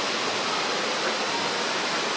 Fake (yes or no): no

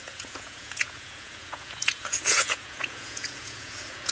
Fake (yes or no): yes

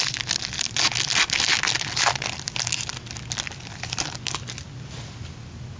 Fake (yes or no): no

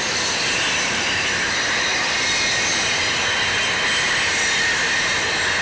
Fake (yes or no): no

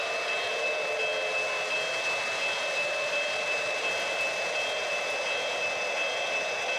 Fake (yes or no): no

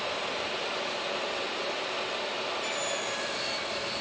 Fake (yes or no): yes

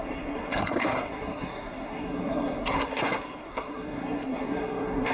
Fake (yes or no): yes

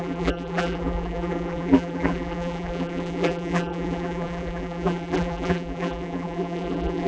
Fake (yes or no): yes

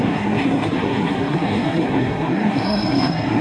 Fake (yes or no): yes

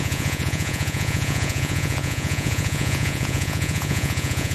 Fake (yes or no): yes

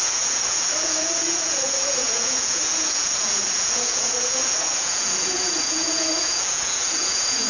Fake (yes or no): yes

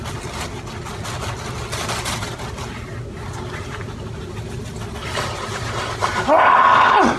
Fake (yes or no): no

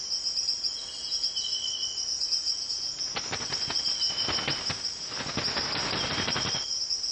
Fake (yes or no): no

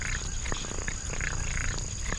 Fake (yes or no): no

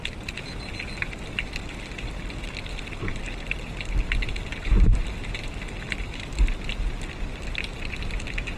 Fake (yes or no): no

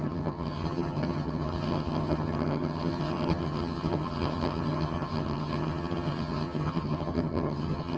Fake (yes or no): yes